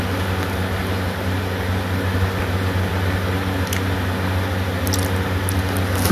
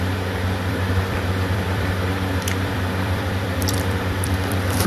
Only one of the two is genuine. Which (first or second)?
first